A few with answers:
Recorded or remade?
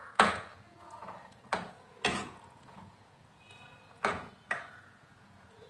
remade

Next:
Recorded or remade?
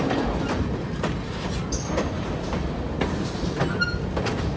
recorded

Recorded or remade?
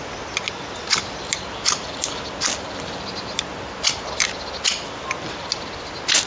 recorded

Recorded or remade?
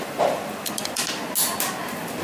recorded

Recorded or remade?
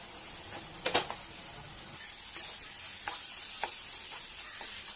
recorded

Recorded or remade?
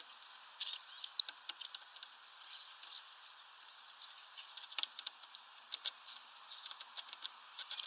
recorded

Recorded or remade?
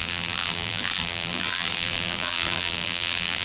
remade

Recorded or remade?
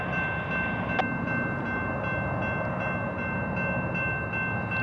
recorded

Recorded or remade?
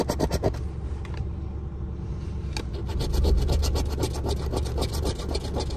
recorded